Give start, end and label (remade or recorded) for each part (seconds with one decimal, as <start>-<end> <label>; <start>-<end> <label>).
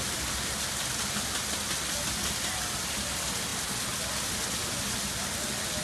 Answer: 0.0-5.8 recorded